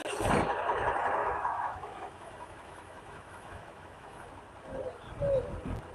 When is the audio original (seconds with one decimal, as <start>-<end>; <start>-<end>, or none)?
0.0-1.2; 4.2-5.9